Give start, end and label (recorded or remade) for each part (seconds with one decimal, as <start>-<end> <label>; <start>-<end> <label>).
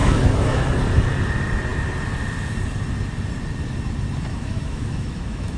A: 0.0-0.7 remade; 0.7-4.3 recorded; 4.3-5.6 remade